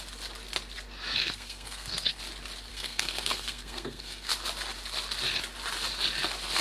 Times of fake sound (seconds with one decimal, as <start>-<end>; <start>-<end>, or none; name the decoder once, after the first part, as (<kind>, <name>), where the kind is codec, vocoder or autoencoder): 1.2-2.2 (codec, SNAC); 2.7-4.3